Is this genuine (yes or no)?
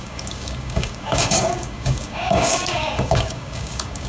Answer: no